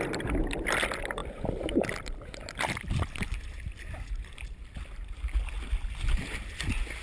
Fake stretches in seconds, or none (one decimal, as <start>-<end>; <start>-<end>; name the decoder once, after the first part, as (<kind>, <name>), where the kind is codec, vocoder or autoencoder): none